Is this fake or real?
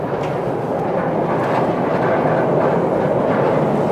real